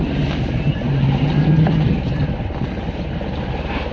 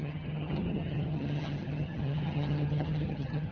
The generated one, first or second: second